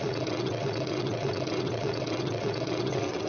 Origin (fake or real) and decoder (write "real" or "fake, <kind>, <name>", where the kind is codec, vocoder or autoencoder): fake, vocoder, WaveNeXt